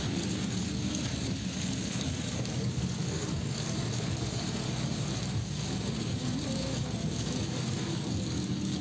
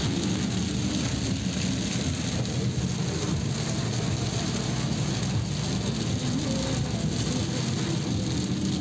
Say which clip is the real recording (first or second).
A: second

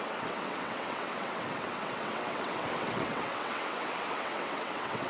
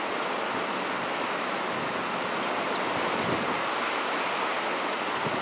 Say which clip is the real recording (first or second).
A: second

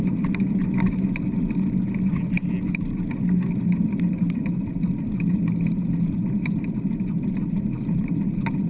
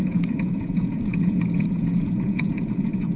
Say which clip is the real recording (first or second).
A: first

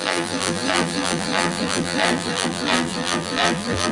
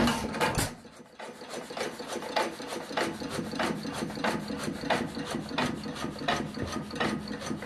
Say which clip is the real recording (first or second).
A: second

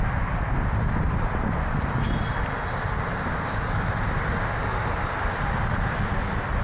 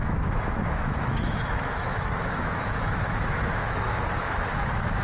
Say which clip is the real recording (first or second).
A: first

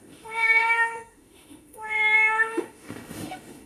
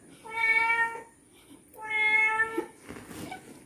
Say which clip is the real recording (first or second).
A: second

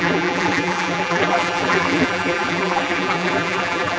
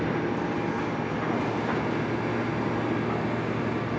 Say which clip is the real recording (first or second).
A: second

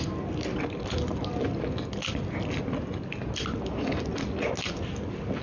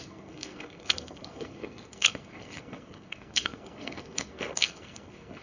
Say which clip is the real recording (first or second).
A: first